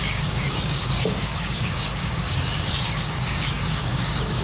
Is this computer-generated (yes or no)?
yes